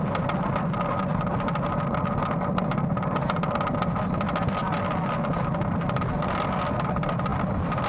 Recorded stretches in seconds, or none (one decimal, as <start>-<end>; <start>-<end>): 0.0-7.9